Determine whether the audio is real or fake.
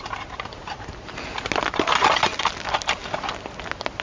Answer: real